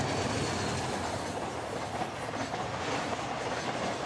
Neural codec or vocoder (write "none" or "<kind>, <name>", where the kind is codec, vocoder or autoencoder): none